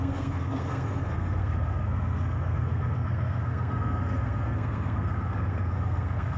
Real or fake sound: fake